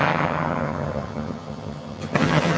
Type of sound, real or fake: fake